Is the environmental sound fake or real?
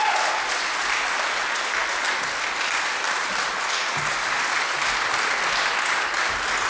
real